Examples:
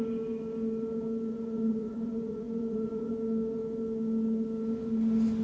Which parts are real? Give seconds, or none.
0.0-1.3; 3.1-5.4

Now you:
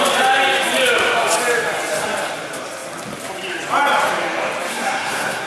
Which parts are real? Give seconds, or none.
0.0-4.7

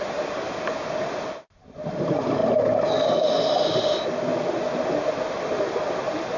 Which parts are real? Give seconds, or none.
0.0-6.4